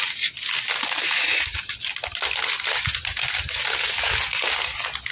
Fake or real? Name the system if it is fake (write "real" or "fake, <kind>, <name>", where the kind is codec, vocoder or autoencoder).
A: real